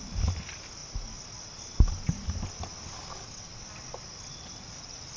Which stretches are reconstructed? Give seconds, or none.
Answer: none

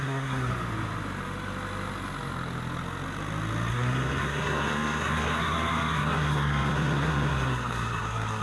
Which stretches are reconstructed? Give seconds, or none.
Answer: 0.0-0.5 (codec, SNAC); 3.7-8.4

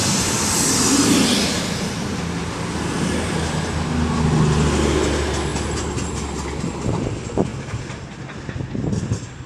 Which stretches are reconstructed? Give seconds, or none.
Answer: none

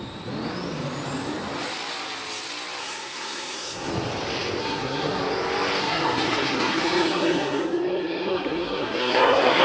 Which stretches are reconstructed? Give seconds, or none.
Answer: 2.8-3.9 (codec, SNAC); 4.6-5.2; 5.8-9.6

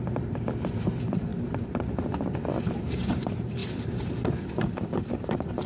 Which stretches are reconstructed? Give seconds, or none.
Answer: 0.0-5.7 (vocoder, BigVGAN v2)

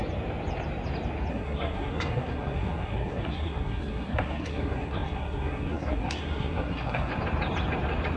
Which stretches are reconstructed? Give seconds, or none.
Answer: 1.3-7.1 (codec, SNAC)

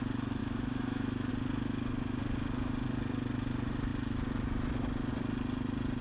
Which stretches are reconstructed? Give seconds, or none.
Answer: 0.4-1.3 (autoencoder, DAC-VAE)

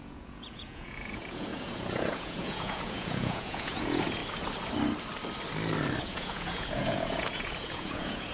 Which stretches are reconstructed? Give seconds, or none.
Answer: 0.0-4.2 (vocoder, Vocos); 6.0-8.3